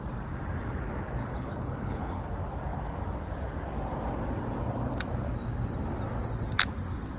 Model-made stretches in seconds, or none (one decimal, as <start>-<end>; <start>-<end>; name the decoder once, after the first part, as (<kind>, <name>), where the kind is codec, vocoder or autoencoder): 1.2-2.2 (codec, HILCodec)